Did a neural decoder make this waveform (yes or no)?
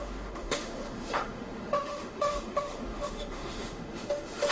yes